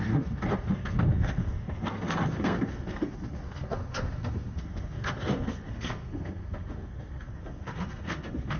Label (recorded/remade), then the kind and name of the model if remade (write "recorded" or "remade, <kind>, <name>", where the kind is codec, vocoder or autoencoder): remade, codec, SNAC